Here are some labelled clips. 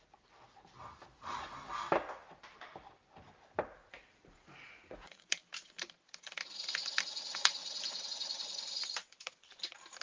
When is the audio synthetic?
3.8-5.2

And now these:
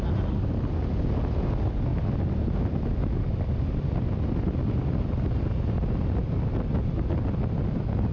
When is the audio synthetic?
none